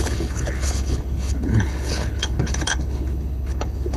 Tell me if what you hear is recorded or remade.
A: remade